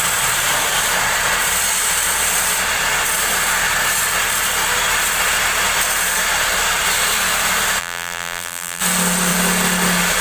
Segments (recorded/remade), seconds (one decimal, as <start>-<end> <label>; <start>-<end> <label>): 0.0-7.8 recorded; 7.8-8.8 remade; 8.8-10.2 recorded